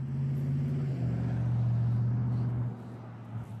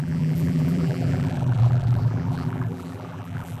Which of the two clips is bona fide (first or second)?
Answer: first